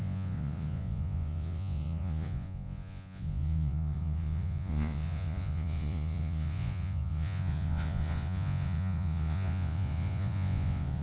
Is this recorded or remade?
remade